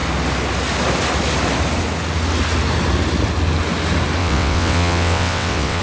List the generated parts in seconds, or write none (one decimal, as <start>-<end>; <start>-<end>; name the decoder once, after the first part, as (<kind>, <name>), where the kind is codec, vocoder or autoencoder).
4.2-5.8 (vocoder, WaveNeXt)